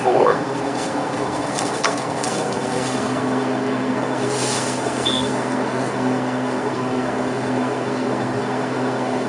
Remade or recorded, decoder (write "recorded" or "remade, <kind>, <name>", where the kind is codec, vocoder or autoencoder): remade, codec, SNAC